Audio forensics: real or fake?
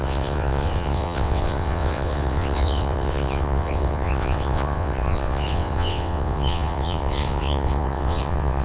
fake